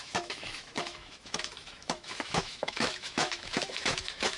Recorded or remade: remade